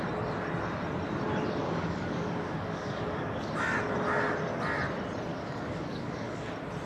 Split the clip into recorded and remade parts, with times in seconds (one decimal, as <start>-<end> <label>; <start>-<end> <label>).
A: 0.0-1.6 recorded; 1.6-3.5 remade; 3.5-5.3 recorded; 5.3-6.5 remade; 6.5-6.9 recorded